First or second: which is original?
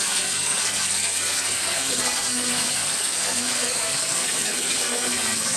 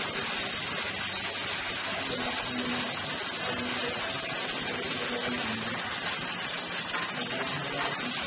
second